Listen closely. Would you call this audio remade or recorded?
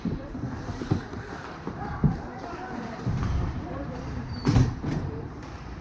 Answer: remade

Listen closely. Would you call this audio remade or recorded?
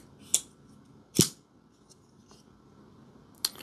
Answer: recorded